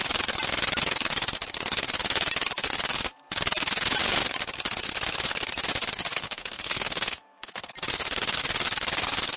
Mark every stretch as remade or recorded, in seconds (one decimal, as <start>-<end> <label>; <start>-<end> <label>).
0.0-6.2 recorded; 6.2-7.7 remade; 7.7-9.4 recorded